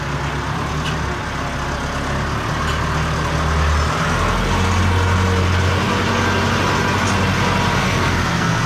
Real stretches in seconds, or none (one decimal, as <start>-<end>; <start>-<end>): 0.0-7.8

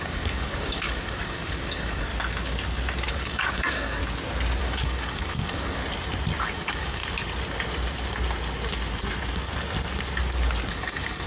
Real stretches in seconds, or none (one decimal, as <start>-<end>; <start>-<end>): 2.1-3.1; 4.0-4.6; 5.8-6.4; 7.0-10.7